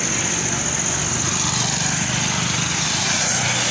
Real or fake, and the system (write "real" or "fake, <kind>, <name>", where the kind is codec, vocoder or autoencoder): real